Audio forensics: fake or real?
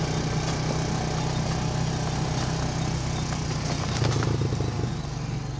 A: real